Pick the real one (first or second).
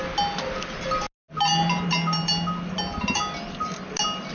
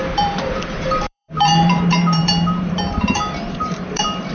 first